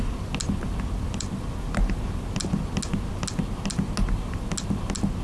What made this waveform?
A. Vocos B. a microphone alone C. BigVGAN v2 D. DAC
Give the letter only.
B